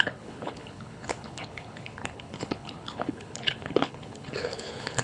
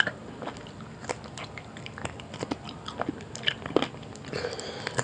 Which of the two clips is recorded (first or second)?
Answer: second